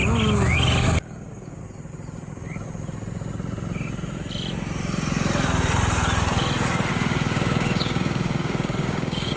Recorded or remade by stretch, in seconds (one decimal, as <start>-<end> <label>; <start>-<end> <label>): 0.0-1.0 recorded; 1.0-1.6 remade; 1.6-6.9 recorded; 6.9-9.4 remade